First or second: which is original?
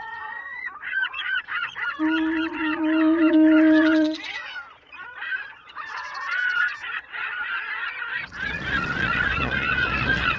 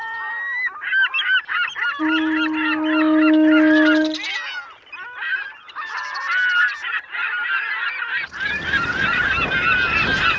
second